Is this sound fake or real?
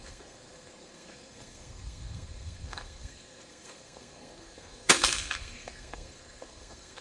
fake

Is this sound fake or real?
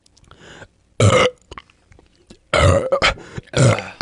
real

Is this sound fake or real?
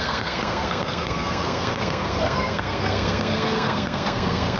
fake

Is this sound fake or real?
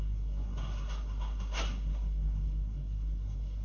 fake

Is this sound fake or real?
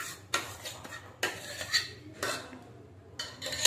real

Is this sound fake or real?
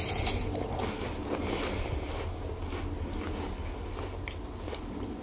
real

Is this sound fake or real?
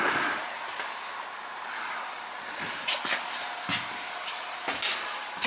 real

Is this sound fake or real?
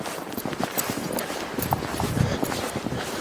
real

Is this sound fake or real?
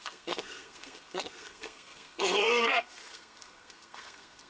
fake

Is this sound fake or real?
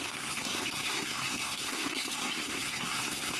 fake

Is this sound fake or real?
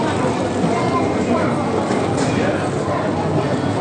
real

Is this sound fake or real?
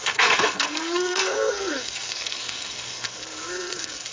fake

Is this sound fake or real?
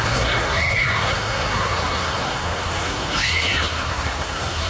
fake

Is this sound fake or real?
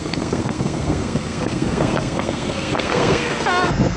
fake